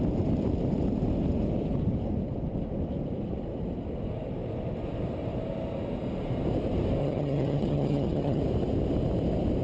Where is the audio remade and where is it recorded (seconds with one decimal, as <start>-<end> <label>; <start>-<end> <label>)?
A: 0.0-7.0 recorded; 7.0-8.4 remade; 8.4-9.6 recorded